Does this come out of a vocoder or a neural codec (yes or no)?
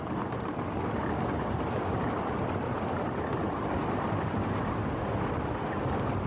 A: no